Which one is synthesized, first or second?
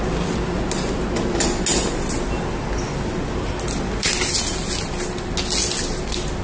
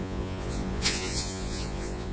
second